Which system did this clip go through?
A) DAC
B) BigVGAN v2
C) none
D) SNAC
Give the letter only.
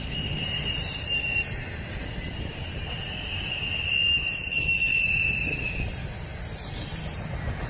B